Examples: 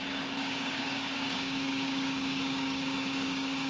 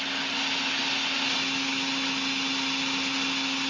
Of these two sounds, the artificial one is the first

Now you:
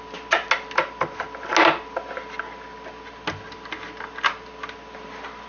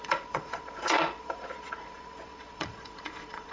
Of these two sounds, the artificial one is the second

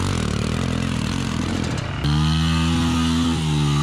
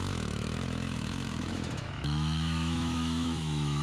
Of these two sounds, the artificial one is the second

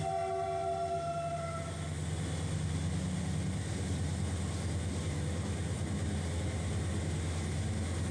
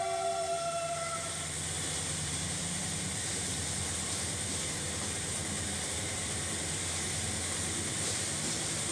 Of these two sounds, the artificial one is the second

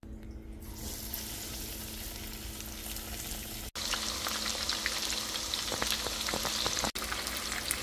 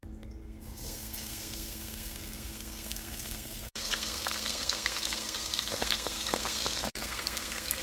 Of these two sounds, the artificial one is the second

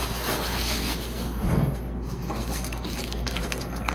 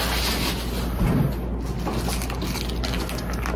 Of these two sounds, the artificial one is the first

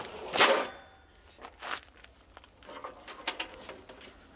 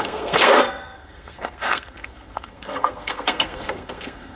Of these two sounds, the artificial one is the second